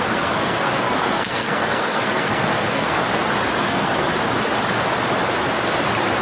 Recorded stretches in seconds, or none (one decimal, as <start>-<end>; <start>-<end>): 3.0-3.6; 4.1-6.2

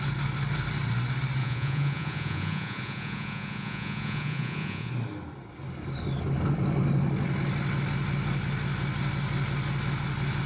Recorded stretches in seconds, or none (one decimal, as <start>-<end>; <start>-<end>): 0.0-1.4; 4.9-10.5

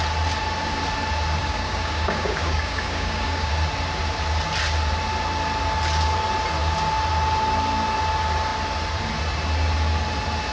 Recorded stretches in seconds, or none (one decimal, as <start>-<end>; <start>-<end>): 0.0-1.4; 3.5-10.5

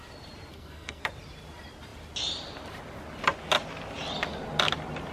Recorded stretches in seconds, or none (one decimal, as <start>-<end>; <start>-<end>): 0.0-0.5; 1.0-5.1

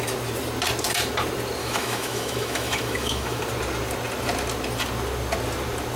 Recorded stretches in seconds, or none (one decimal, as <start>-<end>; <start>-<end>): 0.0-1.6; 3.4-6.0

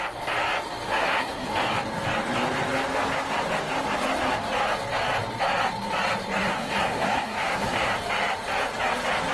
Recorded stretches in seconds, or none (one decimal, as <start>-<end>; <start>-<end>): 0.0-0.9; 1.5-6.4; 7.9-9.3

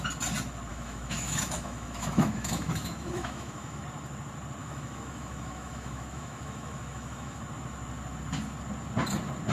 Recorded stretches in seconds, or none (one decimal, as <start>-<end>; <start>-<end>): 0.0-0.7; 3.8-4.6; 7.4-9.5